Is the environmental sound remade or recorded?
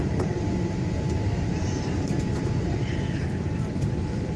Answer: remade